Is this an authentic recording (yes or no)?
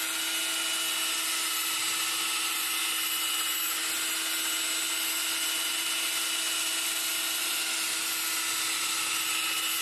yes